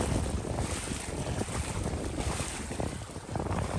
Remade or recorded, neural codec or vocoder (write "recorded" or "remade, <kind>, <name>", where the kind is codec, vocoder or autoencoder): remade, vocoder, BigVGAN v2